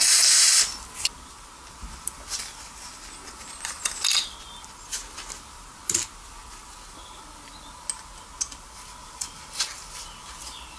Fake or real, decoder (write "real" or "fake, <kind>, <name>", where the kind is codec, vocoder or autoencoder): real